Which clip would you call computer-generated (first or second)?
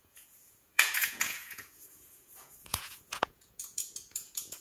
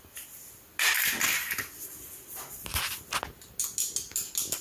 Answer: first